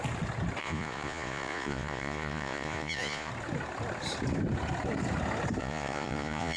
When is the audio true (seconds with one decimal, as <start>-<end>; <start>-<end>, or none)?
0.0-0.6; 3.3-5.6